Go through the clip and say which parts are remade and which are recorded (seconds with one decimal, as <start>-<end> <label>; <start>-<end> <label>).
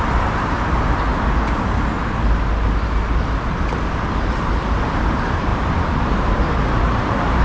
0.0-1.1 remade; 1.1-5.1 recorded; 5.1-7.4 remade